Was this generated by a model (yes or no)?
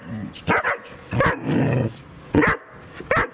no